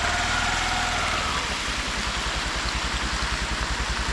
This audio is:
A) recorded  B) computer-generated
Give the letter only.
A